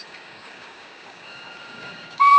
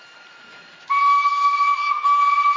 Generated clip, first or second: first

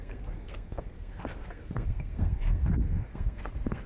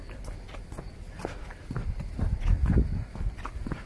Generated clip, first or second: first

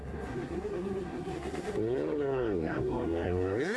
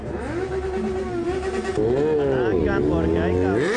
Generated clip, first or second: first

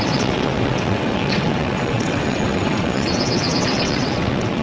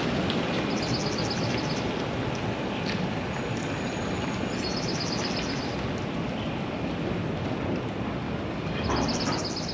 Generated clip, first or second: first